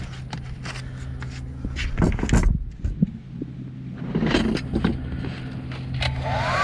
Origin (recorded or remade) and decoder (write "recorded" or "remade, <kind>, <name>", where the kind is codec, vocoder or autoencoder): recorded